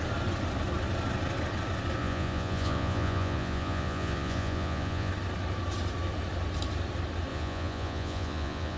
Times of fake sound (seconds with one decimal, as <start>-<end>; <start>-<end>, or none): 2.0-5.1; 7.3-8.8